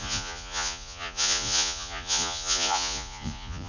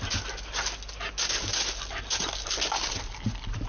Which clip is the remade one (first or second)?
first